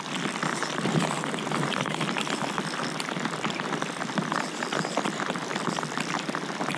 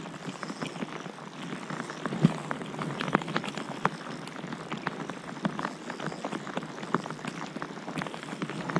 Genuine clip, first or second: second